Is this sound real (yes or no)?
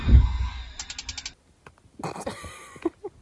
yes